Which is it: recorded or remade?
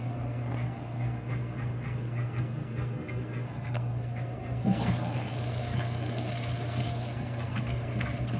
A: remade